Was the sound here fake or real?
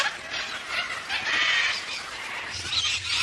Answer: real